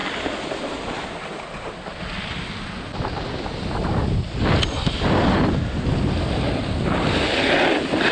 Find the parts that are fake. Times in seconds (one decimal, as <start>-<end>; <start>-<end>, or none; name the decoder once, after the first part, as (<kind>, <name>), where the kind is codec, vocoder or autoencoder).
none